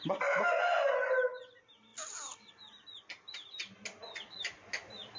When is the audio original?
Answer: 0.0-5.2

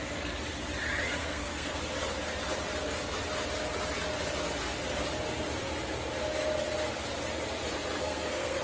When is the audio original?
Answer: 0.0-1.2; 1.8-8.0

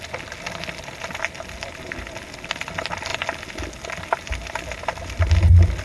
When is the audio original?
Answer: 0.0-5.8

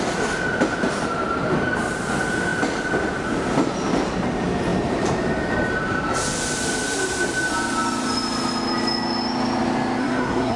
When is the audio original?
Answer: 0.0-10.0

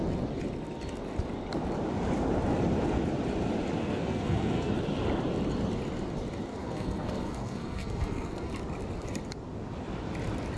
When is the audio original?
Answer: 0.0-3.8; 4.7-6.5; 8.5-10.6